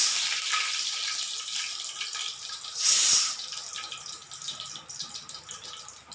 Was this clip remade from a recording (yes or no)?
no